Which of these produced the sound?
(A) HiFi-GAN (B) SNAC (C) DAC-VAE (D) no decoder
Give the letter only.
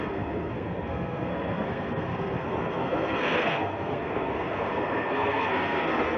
B